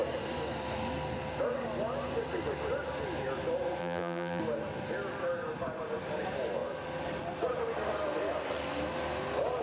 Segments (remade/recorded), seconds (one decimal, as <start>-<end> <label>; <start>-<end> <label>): 0.0-3.8 recorded; 3.8-4.4 remade; 4.4-9.6 recorded

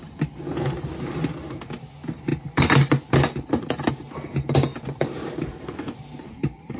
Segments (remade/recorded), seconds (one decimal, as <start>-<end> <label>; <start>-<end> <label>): 0.0-4.7 recorded; 4.7-6.8 remade

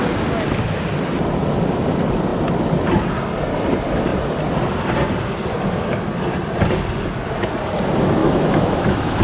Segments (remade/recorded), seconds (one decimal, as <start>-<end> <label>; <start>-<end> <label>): 0.0-8.2 recorded; 8.2-9.2 remade